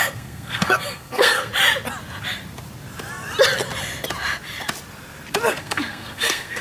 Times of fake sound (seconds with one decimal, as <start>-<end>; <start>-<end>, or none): 0.0-1.5; 5.5-6.6